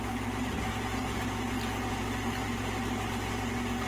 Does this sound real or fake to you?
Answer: real